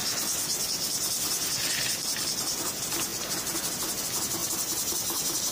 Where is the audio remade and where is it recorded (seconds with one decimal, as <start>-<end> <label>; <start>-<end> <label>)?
0.0-5.5 recorded